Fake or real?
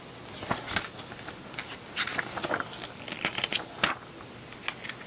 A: real